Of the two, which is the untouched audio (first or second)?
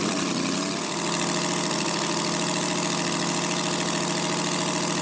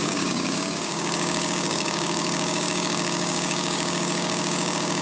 first